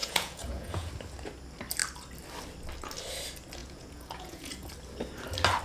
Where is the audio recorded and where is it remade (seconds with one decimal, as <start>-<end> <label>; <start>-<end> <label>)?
0.0-0.9 remade; 0.9-3.6 recorded; 3.6-4.7 remade; 4.7-5.6 recorded